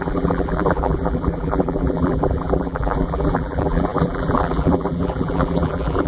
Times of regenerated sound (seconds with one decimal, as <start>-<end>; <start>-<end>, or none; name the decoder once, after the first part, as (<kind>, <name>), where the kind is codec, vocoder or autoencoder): 0.0-6.1 (vocoder, BigVGAN v2)